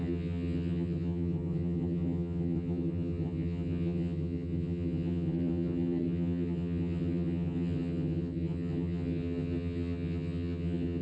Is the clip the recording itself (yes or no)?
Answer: no